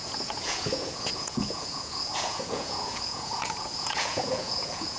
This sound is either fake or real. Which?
fake